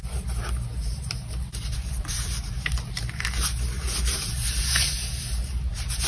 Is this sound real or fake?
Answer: fake